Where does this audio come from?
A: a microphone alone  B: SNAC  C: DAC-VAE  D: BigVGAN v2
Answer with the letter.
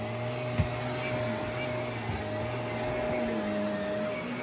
A